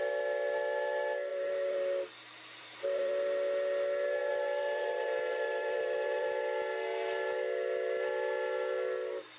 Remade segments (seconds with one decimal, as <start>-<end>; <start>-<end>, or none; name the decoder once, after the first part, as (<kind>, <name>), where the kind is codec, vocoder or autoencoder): 1.3-3.1 (vocoder, BigVGAN v2); 4.2-6.4